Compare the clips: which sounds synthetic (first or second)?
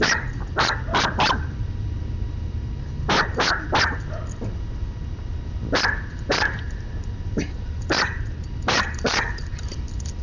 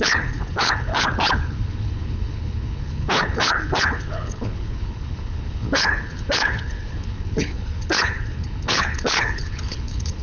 second